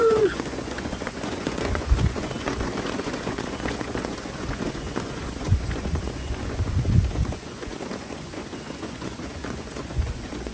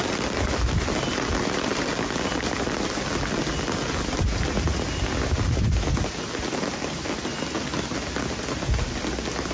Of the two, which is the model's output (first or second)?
first